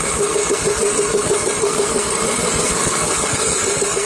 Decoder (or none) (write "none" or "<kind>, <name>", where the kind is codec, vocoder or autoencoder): codec, SNAC